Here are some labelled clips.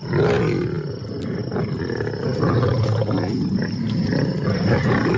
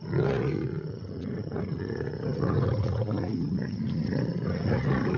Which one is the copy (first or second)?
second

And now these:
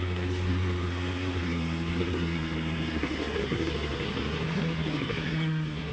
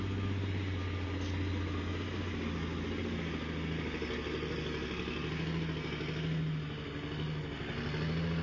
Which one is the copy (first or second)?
first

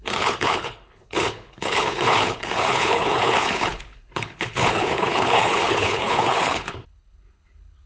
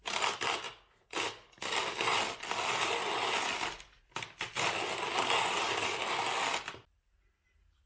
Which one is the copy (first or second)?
first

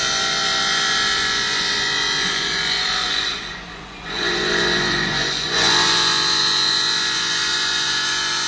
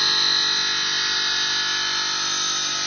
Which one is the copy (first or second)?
first